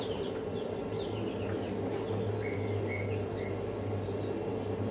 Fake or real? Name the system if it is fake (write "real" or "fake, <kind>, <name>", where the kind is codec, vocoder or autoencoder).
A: real